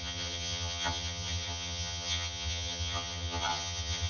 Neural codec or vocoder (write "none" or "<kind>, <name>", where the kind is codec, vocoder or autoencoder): vocoder, HiFi-GAN